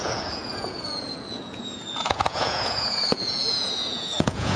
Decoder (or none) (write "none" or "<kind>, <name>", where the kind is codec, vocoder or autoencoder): vocoder, Vocos